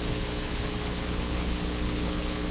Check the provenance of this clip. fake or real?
fake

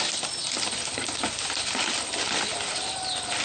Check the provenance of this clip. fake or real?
real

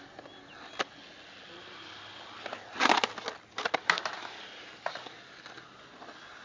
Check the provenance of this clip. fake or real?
real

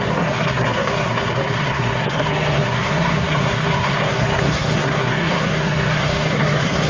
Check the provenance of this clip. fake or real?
fake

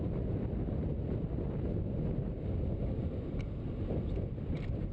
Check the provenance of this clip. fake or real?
real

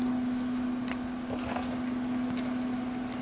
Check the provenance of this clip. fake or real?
real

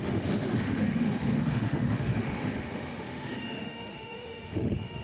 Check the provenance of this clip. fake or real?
fake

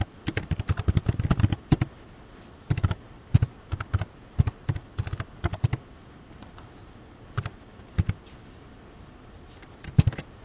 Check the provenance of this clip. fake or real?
real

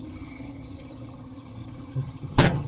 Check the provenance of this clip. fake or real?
fake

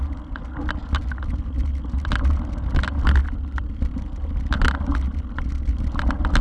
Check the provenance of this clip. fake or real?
real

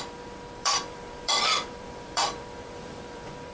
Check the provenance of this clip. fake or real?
fake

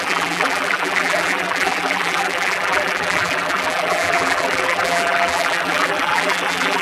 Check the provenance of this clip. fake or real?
fake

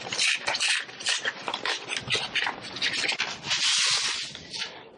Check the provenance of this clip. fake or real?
real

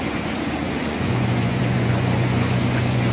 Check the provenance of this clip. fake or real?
fake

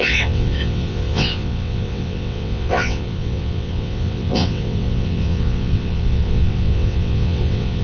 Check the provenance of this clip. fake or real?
fake